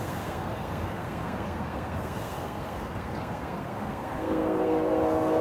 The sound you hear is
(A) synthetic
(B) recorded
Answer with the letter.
A